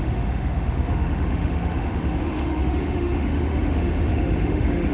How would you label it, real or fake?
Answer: fake